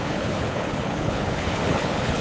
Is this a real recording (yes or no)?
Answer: no